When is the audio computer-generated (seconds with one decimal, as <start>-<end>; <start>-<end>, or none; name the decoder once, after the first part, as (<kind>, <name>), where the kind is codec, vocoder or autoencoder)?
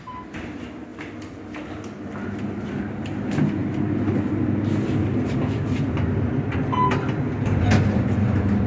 none